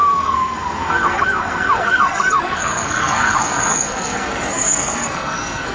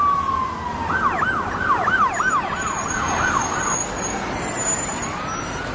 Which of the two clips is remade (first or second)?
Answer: first